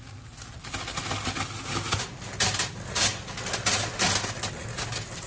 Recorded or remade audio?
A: recorded